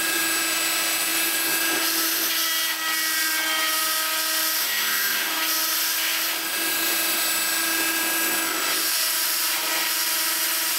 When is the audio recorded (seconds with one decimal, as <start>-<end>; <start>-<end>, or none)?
0.0-4.6; 5.4-10.8

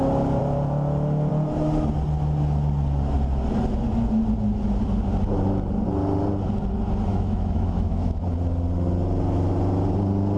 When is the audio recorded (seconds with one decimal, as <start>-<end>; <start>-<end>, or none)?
0.0-7.1; 8.2-10.4